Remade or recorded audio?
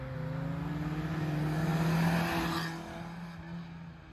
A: recorded